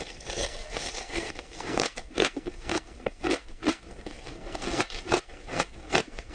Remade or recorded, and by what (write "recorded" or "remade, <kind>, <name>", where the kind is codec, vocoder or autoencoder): remade, codec, SNAC